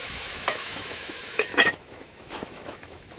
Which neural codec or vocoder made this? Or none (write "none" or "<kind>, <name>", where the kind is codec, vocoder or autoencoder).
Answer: autoencoder, DAC-VAE